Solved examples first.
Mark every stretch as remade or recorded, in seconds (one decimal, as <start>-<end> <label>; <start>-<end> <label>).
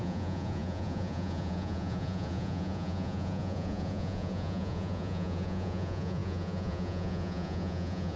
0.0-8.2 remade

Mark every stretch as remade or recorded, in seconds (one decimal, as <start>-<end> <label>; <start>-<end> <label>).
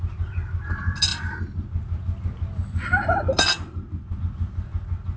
0.0-5.2 recorded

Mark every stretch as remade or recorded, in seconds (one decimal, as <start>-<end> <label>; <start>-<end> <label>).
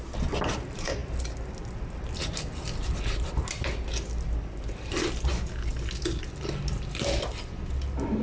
0.0-8.2 recorded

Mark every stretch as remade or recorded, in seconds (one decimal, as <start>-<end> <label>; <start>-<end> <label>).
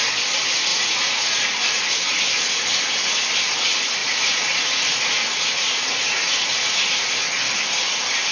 0.0-0.7 recorded; 0.7-1.8 remade; 1.8-4.0 recorded; 4.0-7.1 remade; 7.1-8.3 recorded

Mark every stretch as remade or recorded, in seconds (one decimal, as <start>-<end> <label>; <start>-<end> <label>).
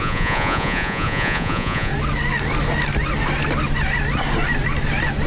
0.0-1.9 remade; 1.9-5.3 recorded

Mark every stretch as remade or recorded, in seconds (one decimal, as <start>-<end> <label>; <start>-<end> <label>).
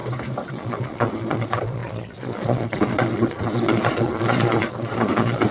0.0-0.5 recorded; 0.5-5.5 remade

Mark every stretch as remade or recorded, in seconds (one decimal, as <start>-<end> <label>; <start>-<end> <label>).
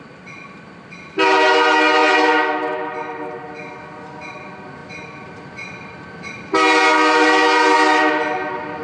0.0-8.8 recorded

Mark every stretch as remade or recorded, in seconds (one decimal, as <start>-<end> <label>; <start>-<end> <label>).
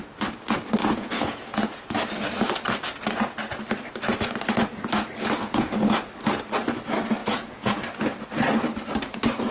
0.0-0.8 recorded; 0.8-1.9 remade; 1.9-5.4 recorded; 5.4-5.9 remade; 5.9-7.2 recorded; 7.2-7.8 remade; 7.8-9.5 recorded